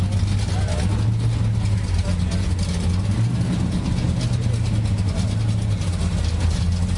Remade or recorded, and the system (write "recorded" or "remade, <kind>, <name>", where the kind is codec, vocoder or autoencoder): recorded